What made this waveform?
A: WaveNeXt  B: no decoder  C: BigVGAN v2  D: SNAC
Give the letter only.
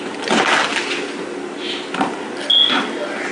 B